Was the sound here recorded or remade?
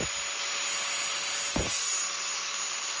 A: recorded